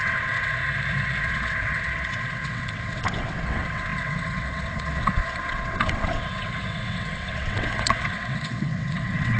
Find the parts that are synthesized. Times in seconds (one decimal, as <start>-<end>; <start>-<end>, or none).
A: 0.0-0.6; 1.2-9.4